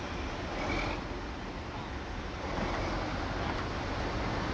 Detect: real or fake real